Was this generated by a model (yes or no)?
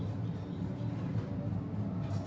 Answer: no